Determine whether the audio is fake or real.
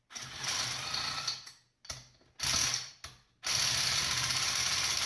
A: real